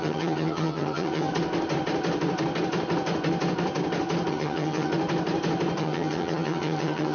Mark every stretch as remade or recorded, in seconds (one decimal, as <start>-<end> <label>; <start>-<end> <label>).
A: 0.0-1.3 remade; 1.3-4.3 recorded; 4.3-4.9 remade; 4.9-5.8 recorded; 5.8-7.1 remade